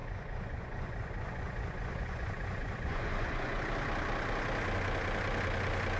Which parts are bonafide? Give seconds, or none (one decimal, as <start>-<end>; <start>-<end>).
3.6-6.0